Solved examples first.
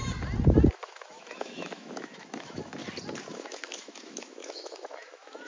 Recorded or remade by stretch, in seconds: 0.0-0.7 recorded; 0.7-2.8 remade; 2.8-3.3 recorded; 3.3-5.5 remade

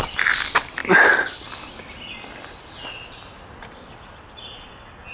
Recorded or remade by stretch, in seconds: 0.0-5.1 recorded